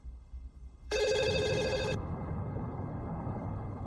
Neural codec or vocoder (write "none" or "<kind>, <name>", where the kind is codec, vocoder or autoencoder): codec, HILCodec